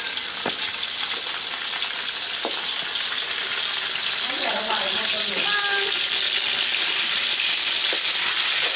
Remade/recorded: recorded